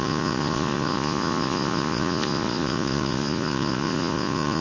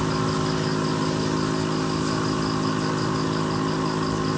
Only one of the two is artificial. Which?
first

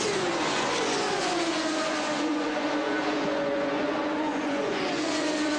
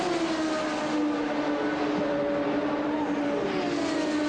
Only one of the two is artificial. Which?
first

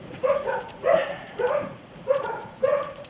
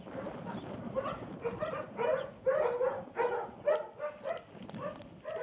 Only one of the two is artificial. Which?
first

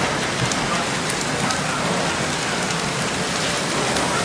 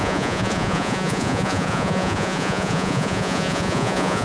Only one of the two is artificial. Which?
second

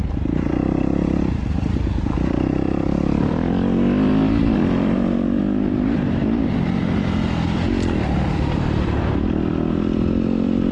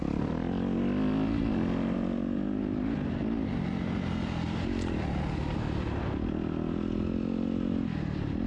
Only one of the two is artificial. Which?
first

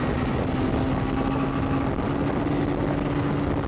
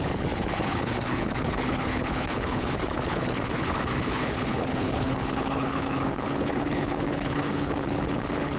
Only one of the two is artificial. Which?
second